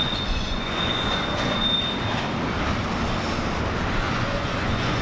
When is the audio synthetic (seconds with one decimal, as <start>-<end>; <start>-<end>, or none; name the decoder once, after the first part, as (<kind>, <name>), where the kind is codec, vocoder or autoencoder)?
0.0-1.6 (vocoder, Vocos); 4.0-5.0